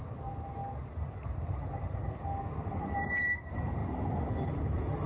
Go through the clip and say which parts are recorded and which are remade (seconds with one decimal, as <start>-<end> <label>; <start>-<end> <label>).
0.0-5.1 recorded